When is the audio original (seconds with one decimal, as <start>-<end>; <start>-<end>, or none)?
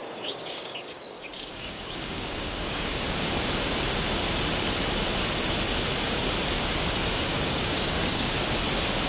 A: 2.9-7.3; 8.4-9.1